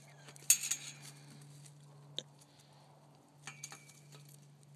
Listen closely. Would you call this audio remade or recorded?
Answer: recorded